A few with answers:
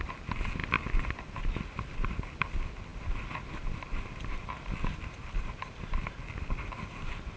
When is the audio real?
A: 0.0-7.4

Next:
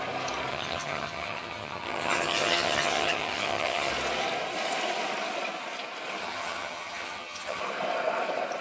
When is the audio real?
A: 0.0-0.5; 3.9-6.2; 7.6-8.6